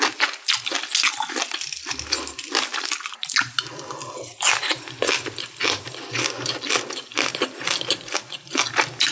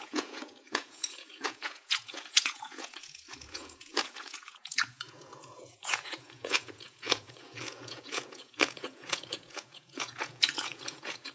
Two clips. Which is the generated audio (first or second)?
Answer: second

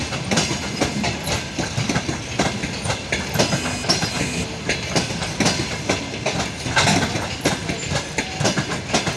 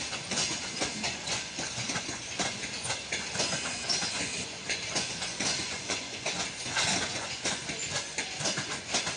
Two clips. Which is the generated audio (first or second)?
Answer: second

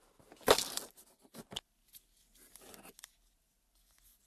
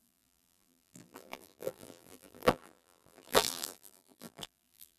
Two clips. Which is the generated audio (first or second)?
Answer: second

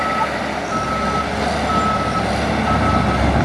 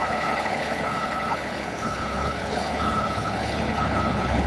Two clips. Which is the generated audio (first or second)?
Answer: second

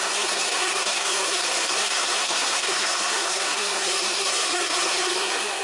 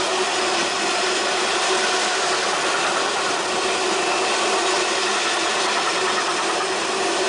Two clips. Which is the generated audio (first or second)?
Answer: first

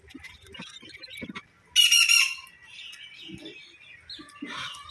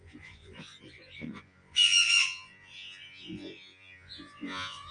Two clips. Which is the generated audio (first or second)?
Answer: second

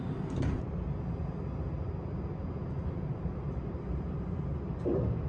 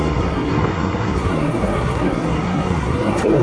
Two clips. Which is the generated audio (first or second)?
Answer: second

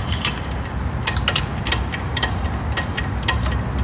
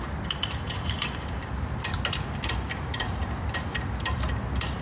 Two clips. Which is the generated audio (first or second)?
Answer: second